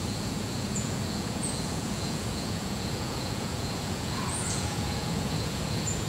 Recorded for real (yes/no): no